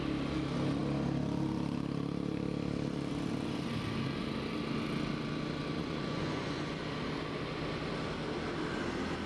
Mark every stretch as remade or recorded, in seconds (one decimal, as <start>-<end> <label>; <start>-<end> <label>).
0.0-5.8 recorded; 5.8-6.8 remade; 6.8-9.3 recorded